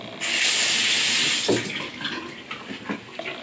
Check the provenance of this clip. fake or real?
real